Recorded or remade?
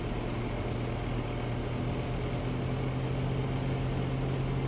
recorded